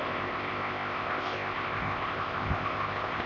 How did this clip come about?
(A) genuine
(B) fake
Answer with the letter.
B